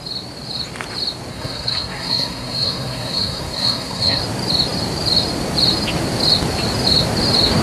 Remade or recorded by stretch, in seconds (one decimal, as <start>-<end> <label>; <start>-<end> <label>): 0.0-1.3 recorded; 1.3-4.2 remade; 4.2-7.6 recorded